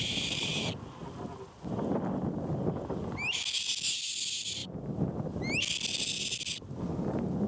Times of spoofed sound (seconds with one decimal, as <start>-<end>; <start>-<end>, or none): 0.0-0.5; 4.6-5.2